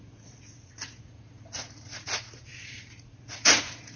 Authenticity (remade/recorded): remade